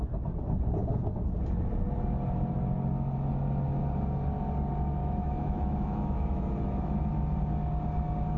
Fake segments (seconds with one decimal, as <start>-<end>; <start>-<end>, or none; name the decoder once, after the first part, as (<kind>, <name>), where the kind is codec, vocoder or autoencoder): 5.0-7.1 (autoencoder, DAC-VAE)

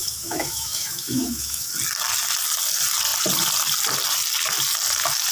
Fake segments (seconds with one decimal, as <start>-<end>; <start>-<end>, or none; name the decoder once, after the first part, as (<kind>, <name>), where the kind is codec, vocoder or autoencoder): 0.0-1.7 (autoencoder, DAC-VAE)

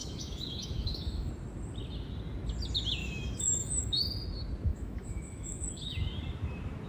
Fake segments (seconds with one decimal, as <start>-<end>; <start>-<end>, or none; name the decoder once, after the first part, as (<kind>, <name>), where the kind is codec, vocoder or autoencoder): 0.0-1.3 (autoencoder, DAC-VAE); 3.0-4.0; 4.7-6.0

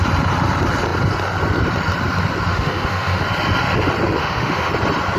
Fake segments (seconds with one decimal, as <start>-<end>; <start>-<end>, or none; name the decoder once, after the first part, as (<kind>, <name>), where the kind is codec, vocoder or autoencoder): 2.5-3.2 (autoencoder, DAC-VAE); 4.2-4.7

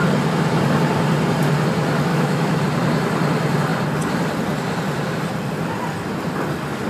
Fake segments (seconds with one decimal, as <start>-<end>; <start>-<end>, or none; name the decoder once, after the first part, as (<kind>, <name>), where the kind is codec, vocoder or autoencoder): 2.1-2.6 (autoencoder, DAC-VAE)

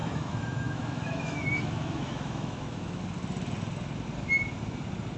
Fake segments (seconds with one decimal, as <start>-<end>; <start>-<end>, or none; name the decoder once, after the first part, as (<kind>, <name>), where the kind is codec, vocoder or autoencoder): 0.0-3.0 (autoencoder, DAC-VAE)

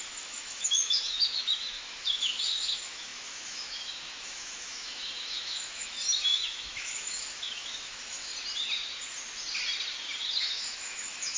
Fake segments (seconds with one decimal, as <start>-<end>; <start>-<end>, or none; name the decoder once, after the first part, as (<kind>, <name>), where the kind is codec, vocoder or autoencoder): 0.0-8.3 (autoencoder, DAC-VAE); 10.4-11.4